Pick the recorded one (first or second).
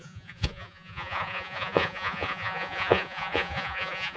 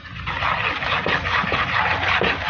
second